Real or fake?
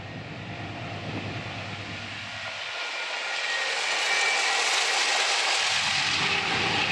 real